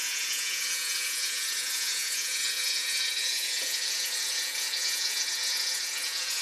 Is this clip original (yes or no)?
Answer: no